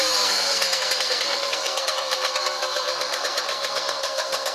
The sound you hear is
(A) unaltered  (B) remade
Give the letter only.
B